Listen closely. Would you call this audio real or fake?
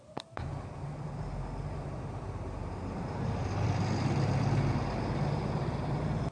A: fake